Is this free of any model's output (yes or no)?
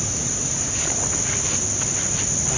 yes